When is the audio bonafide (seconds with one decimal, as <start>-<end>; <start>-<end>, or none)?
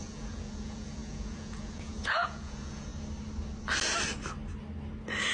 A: 2.9-5.3